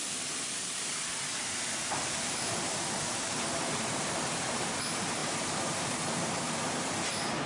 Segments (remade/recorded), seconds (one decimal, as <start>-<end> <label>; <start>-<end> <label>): 0.0-1.3 recorded; 1.3-4.7 remade; 4.7-5.2 recorded; 5.2-6.5 remade; 6.5-7.5 recorded